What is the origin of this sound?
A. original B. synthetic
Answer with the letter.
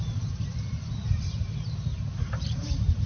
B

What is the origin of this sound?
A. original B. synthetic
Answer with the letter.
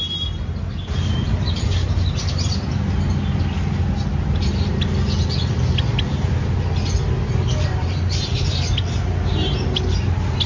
A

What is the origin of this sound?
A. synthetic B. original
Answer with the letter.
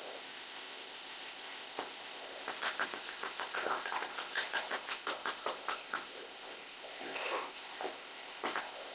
A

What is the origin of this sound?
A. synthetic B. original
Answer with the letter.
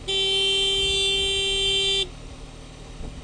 B